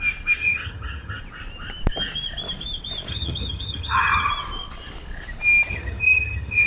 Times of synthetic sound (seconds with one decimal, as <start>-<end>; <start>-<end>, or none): 0.4-1.2; 3.1-4.3; 5.7-6.7